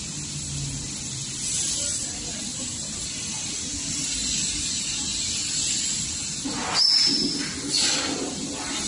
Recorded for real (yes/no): yes